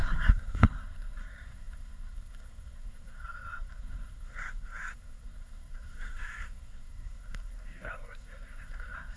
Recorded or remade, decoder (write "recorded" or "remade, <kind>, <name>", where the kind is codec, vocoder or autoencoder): remade, codec, SNAC